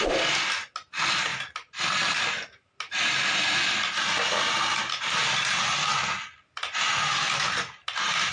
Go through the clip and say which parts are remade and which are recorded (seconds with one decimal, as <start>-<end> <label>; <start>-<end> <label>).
0.0-8.3 recorded